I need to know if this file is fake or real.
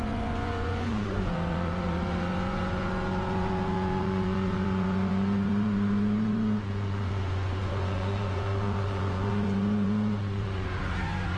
fake